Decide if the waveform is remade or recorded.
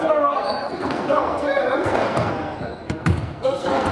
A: remade